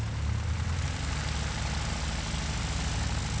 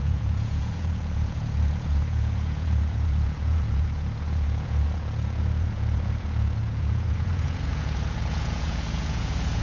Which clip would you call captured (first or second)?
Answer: first